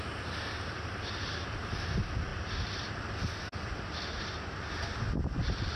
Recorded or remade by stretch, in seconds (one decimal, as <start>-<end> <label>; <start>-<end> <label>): 0.0-5.8 recorded